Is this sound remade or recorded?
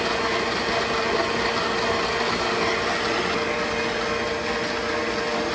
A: recorded